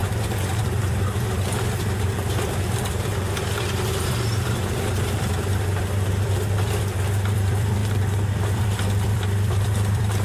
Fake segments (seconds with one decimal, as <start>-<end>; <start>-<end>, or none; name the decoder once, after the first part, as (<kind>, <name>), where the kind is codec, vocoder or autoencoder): 0.6-7.8 (vocoder, BigVGAN v2); 8.3-10.2